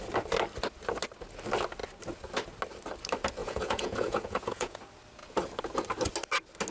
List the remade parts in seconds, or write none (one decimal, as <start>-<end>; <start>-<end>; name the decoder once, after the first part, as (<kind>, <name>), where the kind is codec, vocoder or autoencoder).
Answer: 3.4-4.8 (vocoder, Vocos)